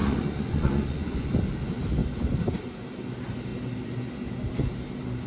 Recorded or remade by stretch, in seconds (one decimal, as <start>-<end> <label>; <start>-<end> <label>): 0.0-1.3 remade; 1.3-5.3 recorded